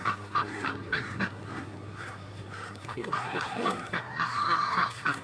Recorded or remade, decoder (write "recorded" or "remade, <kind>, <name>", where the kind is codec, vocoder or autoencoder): remade, codec, SNAC